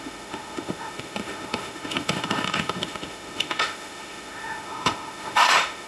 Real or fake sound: fake